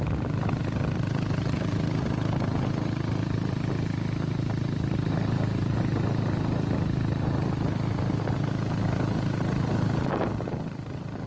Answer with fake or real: real